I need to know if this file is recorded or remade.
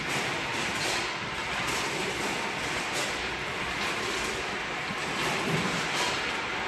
recorded